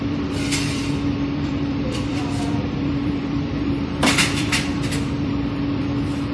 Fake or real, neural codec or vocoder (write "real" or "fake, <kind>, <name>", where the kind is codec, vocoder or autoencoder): fake, vocoder, BigVGAN v2